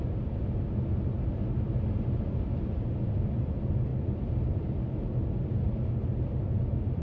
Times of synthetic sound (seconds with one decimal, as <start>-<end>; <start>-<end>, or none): 3.9-4.9